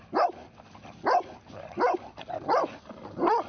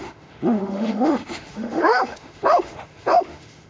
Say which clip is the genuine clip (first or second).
first